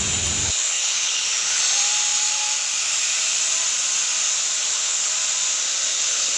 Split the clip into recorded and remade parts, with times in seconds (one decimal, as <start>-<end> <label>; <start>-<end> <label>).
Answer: 0.0-0.4 recorded; 0.4-1.6 remade; 1.6-4.6 recorded; 4.6-5.1 remade; 5.1-5.9 recorded; 5.9-6.4 remade